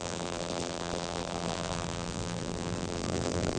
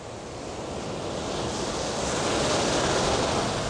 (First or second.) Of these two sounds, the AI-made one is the first